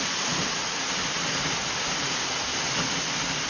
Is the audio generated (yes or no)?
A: no